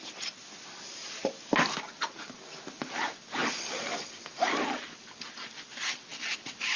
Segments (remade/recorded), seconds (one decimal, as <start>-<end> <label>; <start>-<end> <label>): 0.0-6.1 recorded; 6.1-6.8 remade